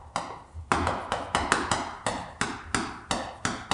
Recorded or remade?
recorded